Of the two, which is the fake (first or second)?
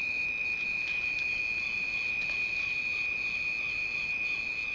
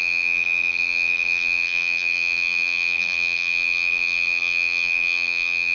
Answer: second